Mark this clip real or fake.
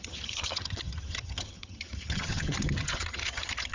fake